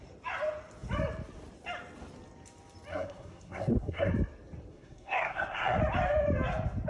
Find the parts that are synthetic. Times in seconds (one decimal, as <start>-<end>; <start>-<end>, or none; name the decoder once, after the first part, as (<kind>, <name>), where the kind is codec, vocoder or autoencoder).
2.9-4.1 (codec, SNAC); 4.7-5.8